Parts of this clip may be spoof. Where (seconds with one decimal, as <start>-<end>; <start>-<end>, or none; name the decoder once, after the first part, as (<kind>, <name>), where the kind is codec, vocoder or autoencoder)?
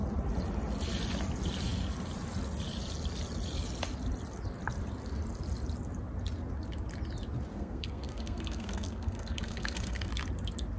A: 7.5-10.1 (codec, SNAC)